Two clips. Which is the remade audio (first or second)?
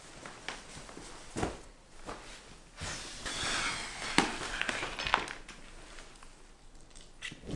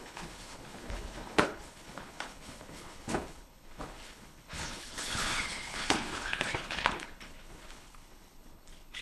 second